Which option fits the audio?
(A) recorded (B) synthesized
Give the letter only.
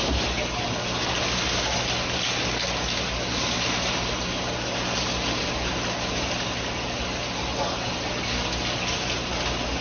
A